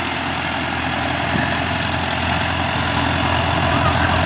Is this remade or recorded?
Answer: recorded